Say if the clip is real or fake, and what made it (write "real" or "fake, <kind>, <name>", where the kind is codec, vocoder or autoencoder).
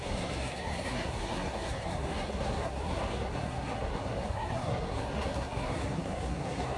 fake, codec, SNAC